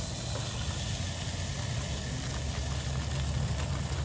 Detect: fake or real real